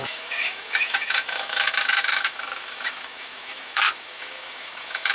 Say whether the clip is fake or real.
fake